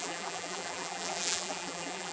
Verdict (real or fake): fake